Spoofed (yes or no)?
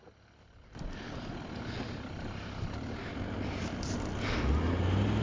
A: no